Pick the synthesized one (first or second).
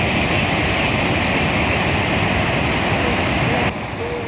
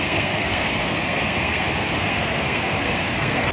second